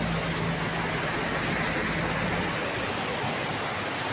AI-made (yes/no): no